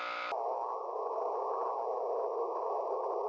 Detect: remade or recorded recorded